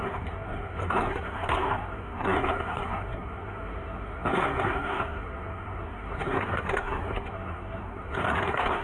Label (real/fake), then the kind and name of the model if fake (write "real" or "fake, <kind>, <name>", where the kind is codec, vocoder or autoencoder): fake, codec, SNAC